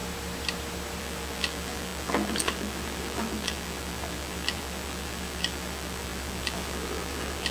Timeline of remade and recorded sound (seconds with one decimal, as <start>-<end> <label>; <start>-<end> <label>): 0.0-1.0 recorded; 1.0-7.5 remade